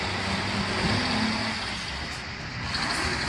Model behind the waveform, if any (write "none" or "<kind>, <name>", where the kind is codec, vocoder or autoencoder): none